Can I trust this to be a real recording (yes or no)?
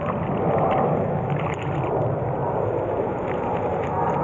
yes